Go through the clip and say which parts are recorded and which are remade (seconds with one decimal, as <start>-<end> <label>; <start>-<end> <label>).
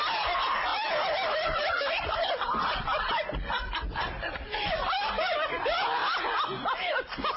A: 0.0-0.7 recorded; 0.7-5.1 remade; 5.1-7.4 recorded